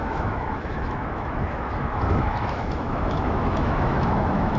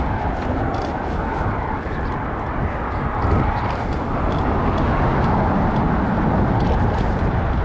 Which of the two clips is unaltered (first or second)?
second